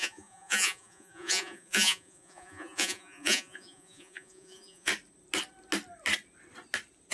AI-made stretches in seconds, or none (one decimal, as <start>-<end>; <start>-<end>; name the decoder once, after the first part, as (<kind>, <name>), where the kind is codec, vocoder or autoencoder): 0.0-4.9 (vocoder, Vocos)